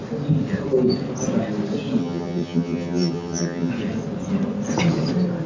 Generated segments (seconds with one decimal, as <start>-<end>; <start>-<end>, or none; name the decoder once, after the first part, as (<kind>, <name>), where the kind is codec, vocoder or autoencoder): 2.0-3.7 (vocoder, HiFi-GAN)